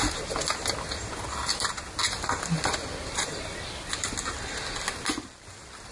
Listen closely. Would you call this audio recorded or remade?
recorded